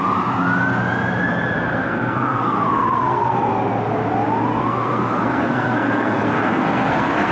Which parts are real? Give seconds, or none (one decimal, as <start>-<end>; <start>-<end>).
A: 0.0-1.7; 3.5-4.5